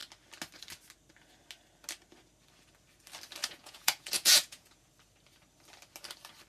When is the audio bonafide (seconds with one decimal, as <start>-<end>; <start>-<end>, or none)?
0.0-3.4; 4.9-6.5